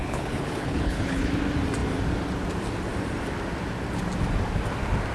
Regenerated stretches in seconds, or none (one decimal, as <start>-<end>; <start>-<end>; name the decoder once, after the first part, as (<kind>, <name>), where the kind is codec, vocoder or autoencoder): 0.0-1.3 (codec, HILCodec)